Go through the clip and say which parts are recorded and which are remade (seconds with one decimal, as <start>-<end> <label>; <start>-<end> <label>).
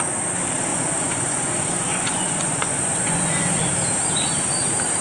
0.0-0.7 recorded; 0.7-3.7 remade; 3.7-5.0 recorded